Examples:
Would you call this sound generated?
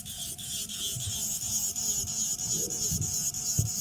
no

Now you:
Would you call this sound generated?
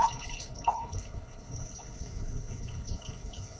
yes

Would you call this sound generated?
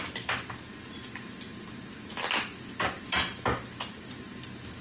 no